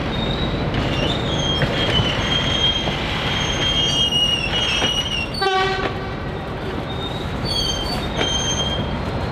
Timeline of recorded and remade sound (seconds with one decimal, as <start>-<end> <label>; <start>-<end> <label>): 0.0-0.6 recorded; 0.6-3.6 remade; 3.6-5.8 recorded; 5.8-9.3 remade